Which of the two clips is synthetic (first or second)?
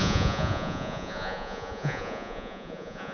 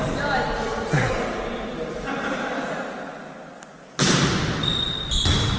first